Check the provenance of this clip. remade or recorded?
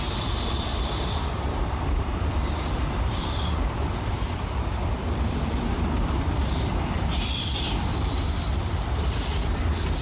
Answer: remade